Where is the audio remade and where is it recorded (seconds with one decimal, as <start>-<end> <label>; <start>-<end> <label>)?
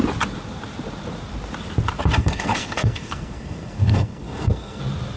0.0-2.2 recorded; 2.2-4.8 remade; 4.8-5.2 recorded